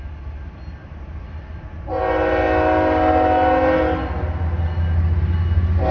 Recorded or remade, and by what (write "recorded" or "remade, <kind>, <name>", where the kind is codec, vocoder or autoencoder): recorded